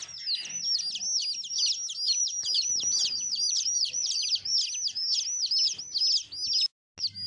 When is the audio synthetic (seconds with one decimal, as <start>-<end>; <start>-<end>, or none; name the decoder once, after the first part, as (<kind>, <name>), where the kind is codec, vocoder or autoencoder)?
2.2-4.5 (vocoder, BigVGAN v2)

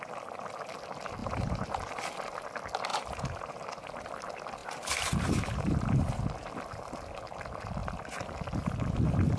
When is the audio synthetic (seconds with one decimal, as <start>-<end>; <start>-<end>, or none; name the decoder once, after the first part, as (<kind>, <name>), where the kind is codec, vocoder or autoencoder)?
1.2-1.8 (vocoder, BigVGAN v2); 2.9-4.1; 4.6-6.2

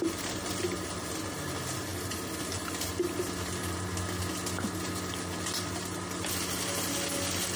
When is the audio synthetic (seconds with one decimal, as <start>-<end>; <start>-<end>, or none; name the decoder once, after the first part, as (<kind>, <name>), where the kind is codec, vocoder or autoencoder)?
none

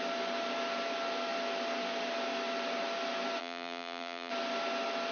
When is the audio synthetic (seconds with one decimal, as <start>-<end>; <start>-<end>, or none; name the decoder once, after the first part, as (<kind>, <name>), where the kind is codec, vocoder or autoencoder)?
3.4-4.3 (vocoder, BigVGAN v2)

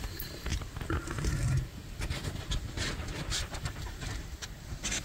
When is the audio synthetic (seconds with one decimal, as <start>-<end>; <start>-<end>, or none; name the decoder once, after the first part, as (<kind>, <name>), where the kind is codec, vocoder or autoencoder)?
0.0-0.5 (vocoder, BigVGAN v2); 3.4-5.0

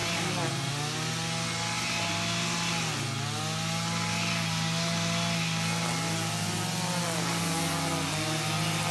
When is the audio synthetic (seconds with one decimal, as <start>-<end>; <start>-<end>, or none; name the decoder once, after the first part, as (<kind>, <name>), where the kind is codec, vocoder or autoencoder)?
none

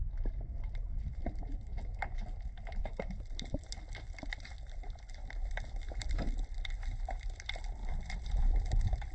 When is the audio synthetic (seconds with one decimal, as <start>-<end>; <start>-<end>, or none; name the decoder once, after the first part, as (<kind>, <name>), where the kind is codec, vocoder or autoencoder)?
2.8-6.3 (vocoder, BigVGAN v2); 7.8-8.4

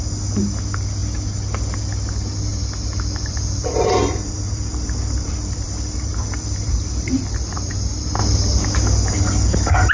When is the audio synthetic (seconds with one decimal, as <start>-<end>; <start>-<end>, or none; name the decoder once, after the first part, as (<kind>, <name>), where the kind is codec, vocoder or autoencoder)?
2.5-7.7 (vocoder, BigVGAN v2)